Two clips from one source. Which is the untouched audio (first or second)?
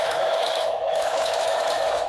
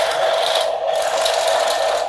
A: second